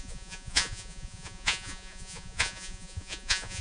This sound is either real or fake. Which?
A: fake